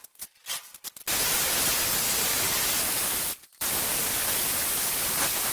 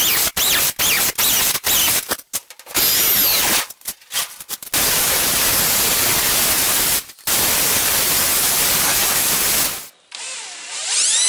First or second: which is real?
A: second